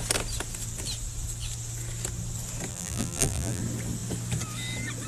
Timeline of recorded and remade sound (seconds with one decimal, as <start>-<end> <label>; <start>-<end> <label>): 0.0-2.7 recorded; 2.7-3.6 remade; 3.6-5.1 recorded